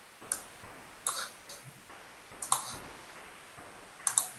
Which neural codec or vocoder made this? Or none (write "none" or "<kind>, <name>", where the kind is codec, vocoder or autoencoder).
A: none